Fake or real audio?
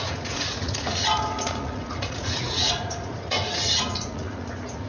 fake